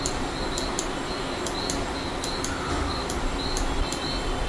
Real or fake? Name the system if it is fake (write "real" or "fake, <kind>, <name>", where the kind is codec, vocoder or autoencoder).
real